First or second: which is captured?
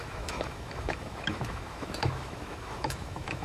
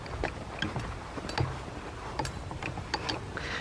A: second